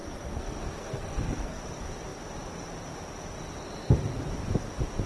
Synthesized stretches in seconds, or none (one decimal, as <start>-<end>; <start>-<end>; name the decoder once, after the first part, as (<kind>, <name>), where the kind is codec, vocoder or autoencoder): 0.0-1.6 (codec, SNAC)